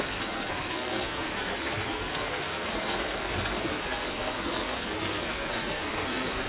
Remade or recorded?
remade